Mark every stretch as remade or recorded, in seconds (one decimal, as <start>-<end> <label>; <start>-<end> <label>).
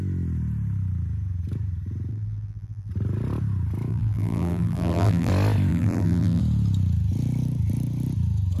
0.0-2.1 recorded; 2.1-2.9 remade; 2.9-3.9 recorded; 3.9-5.3 remade; 5.3-5.7 recorded; 5.7-6.4 remade; 6.4-8.6 recorded